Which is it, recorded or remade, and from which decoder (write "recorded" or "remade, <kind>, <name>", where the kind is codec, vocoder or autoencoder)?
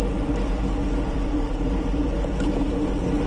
recorded